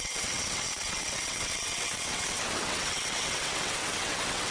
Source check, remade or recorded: remade